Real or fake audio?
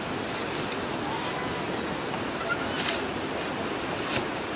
real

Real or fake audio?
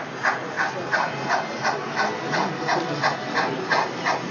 real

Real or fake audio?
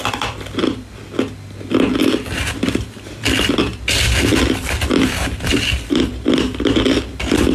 real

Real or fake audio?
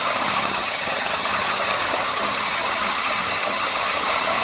fake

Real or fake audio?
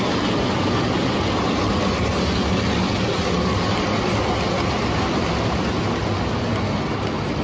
real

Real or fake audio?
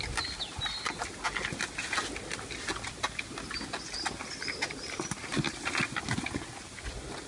real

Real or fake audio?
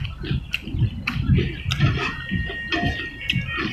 real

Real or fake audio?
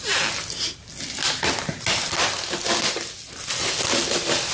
real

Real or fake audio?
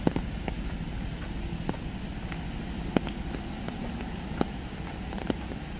real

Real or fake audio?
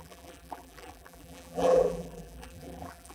fake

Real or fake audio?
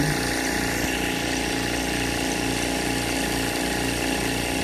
real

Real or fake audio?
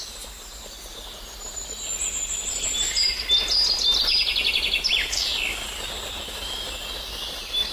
real